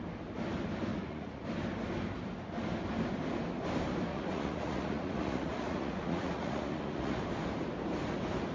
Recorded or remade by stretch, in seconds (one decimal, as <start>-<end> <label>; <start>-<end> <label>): 0.0-0.9 recorded; 0.9-1.4 remade; 1.4-4.1 recorded; 4.1-7.2 remade; 7.2-8.5 recorded